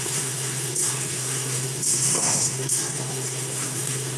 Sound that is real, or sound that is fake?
fake